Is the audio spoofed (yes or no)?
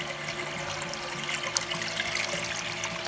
no